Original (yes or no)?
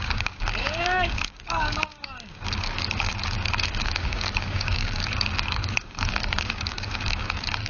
no